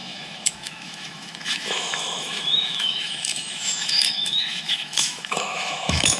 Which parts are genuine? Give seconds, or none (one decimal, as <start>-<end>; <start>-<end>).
none